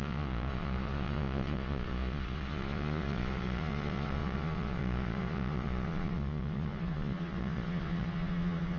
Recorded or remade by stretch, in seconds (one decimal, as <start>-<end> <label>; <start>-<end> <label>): 0.0-8.8 remade